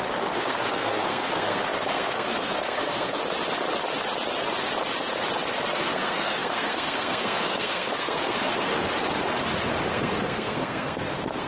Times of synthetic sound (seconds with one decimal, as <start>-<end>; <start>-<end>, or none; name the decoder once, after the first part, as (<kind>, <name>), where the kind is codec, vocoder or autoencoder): 0.0-3.2 (codec, SNAC); 5.7-8.7; 9.9-11.5